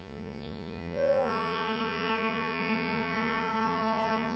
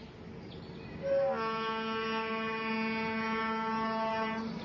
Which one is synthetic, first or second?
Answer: first